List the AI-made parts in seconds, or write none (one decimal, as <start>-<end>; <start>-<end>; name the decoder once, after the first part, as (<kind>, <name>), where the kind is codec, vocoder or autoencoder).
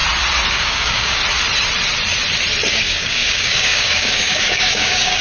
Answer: 0.5-1.2 (codec, DAC); 2.7-5.2